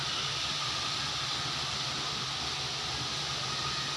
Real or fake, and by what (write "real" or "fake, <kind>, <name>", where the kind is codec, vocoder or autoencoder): real